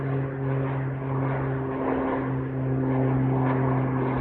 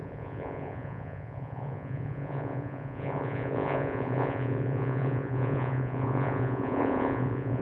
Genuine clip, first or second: first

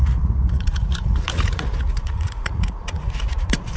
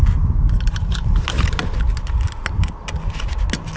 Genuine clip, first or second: second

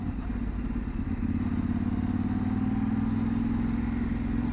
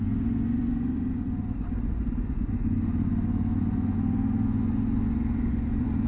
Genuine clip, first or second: first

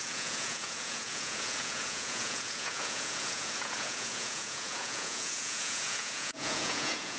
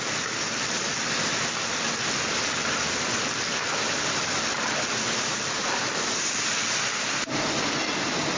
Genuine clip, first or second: second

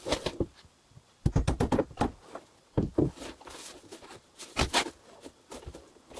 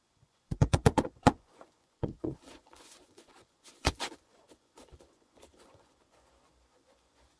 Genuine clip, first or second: first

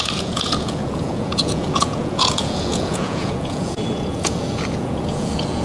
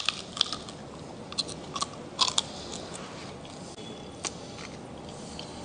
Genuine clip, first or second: second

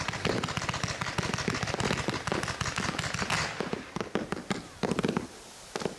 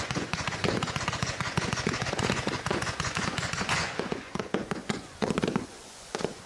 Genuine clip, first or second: first